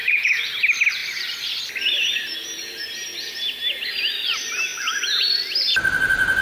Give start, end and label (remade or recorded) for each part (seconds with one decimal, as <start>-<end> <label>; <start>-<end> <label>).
0.0-0.5 remade; 0.5-6.4 recorded